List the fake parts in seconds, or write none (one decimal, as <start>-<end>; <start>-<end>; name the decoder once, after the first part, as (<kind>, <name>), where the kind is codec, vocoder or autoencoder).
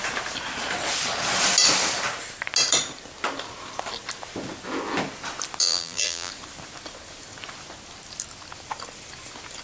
5.6-6.3 (vocoder, BigVGAN v2)